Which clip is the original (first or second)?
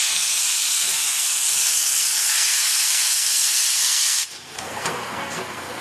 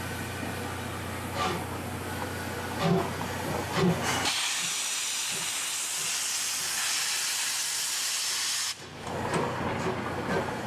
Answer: second